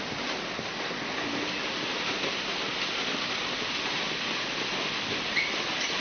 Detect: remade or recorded recorded